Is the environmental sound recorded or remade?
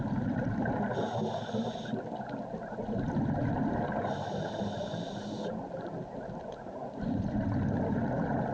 recorded